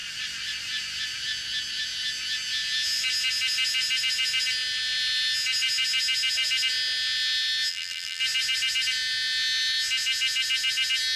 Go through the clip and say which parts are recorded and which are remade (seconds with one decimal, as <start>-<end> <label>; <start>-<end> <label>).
0.0-7.7 recorded; 7.7-8.2 remade; 8.2-11.2 recorded